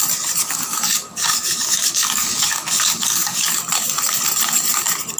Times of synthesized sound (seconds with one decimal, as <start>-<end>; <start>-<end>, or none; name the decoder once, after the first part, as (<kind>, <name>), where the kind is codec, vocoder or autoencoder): 0.4-3.5 (codec, DAC)